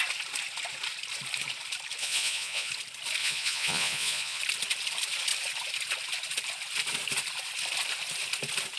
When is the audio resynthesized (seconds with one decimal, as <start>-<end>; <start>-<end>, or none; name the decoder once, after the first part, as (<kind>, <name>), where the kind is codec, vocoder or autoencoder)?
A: 2.0-2.7 (vocoder, Vocos); 3.2-4.4